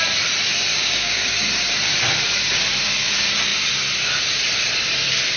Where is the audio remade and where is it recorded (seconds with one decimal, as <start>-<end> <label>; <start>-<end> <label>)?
0.0-0.7 recorded; 0.7-1.3 remade; 1.3-5.4 recorded